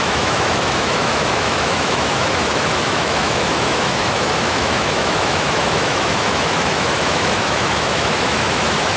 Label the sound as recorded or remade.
remade